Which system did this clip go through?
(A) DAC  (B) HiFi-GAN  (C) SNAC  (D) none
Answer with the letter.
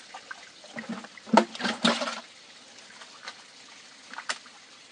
D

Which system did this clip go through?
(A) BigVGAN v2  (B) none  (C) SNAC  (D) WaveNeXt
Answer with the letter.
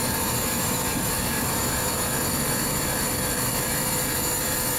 A